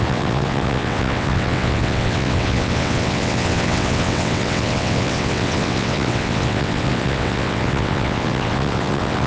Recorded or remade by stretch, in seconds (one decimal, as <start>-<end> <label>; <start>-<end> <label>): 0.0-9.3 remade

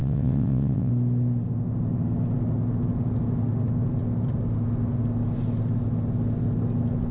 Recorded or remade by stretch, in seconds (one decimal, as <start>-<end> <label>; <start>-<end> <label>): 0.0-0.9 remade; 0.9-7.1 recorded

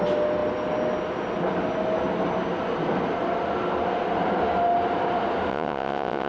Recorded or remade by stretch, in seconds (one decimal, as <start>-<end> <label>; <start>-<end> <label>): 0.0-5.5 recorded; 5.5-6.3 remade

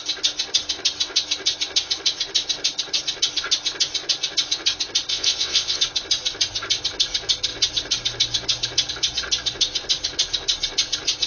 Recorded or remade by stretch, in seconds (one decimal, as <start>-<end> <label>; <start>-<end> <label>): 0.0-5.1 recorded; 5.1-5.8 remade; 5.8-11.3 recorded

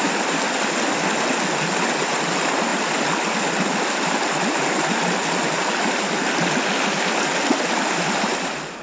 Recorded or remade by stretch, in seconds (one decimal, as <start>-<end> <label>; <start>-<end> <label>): 0.0-8.8 recorded

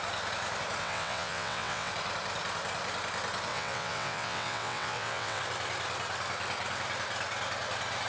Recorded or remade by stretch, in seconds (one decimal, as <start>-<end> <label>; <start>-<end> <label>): 0.0-0.8 recorded; 0.8-1.9 remade; 1.9-3.5 recorded; 3.5-5.4 remade; 5.4-8.1 recorded

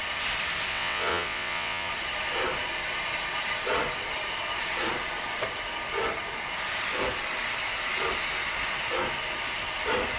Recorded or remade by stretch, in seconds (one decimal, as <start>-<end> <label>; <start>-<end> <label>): 0.0-0.7 recorded; 0.7-1.9 remade; 1.9-10.2 recorded